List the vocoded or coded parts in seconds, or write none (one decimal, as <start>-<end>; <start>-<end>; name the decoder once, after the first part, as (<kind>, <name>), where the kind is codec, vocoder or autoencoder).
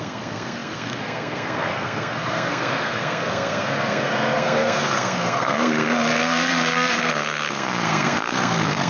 0.0-8.9 (codec, SNAC)